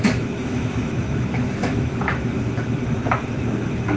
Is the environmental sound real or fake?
fake